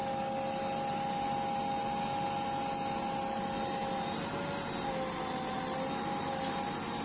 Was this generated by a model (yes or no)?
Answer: no